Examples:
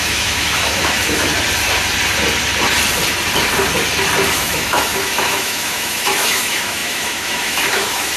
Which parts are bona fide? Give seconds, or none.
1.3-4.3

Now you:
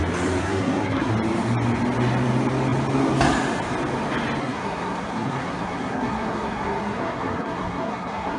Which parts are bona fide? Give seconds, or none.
0.0-0.4; 1.1-4.4

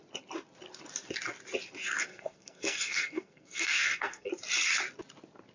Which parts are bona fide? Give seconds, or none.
0.0-2.1; 4.3-5.5

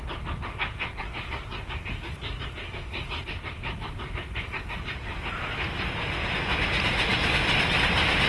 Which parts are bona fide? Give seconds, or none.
0.0-8.3

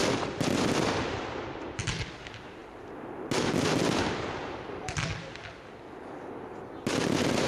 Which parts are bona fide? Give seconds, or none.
1.8-7.5